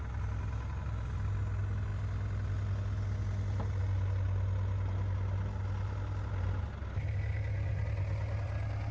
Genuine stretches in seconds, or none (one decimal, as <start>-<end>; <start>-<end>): 0.0-8.9